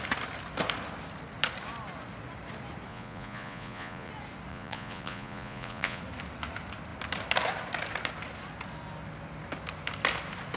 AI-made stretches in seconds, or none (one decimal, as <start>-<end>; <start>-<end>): 2.9-4.1; 4.5-6.0